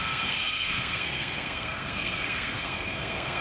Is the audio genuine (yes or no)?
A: no